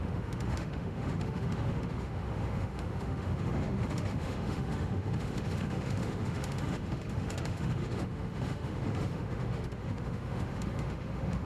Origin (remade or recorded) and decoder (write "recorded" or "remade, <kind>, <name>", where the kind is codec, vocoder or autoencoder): remade, autoencoder, DAC-VAE